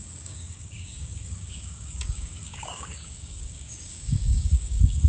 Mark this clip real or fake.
fake